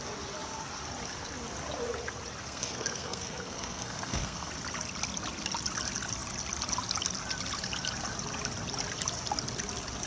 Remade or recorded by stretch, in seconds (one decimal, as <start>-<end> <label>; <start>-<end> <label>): 0.0-2.4 recorded; 2.4-4.5 remade; 4.5-10.1 recorded

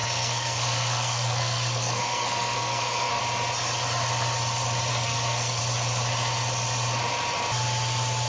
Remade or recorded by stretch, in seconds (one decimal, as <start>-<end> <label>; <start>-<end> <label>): 0.0-3.2 remade; 3.2-4.9 recorded; 4.9-5.6 remade; 5.6-8.3 recorded

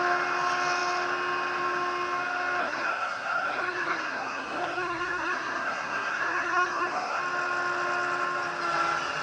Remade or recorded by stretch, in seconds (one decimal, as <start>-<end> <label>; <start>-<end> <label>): 0.0-2.6 recorded; 2.6-7.2 remade; 7.2-9.2 recorded